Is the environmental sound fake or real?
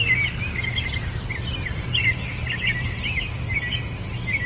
real